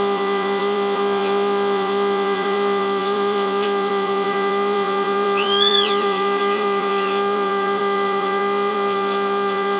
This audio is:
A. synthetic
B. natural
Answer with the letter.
A